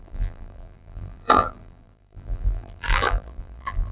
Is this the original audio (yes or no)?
no